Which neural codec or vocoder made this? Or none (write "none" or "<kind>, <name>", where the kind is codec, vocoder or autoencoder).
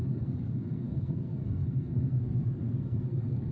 codec, SNAC